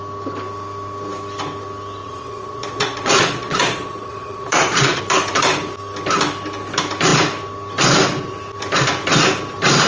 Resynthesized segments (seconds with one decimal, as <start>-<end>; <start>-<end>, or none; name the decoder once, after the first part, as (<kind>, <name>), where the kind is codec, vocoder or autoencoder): 2.0-5.0 (vocoder, Vocos)